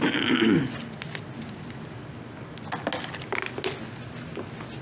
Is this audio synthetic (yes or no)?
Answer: no